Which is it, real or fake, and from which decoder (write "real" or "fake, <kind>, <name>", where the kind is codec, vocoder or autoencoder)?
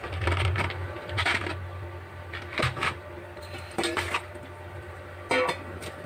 real